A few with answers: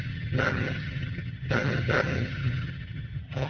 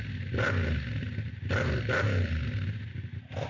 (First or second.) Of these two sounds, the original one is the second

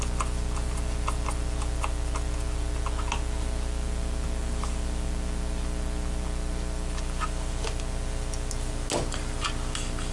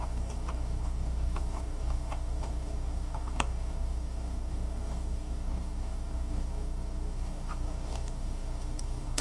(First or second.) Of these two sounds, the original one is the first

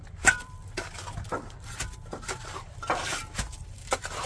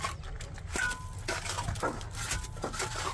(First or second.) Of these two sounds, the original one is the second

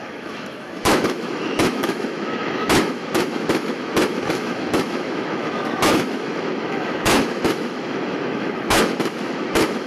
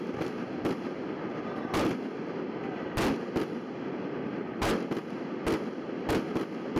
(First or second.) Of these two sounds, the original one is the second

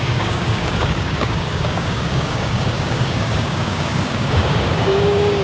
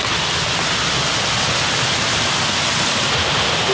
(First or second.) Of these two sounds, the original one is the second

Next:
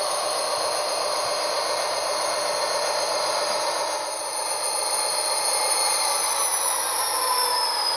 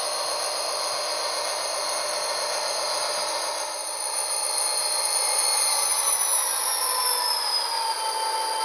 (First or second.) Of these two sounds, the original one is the second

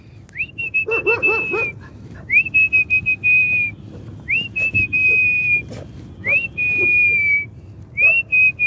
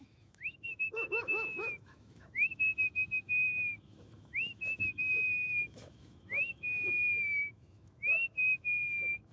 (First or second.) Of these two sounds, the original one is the first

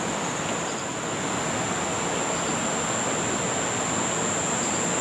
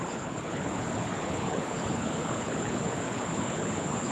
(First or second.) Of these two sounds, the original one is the first